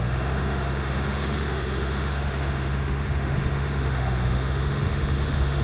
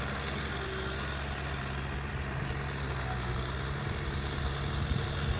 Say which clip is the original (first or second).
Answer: second